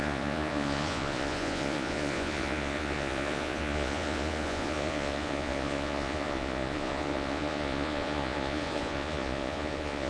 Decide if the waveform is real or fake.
fake